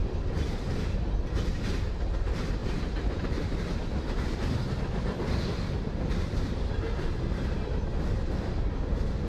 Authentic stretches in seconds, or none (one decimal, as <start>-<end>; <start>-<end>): 0.0-2.6; 6.7-9.3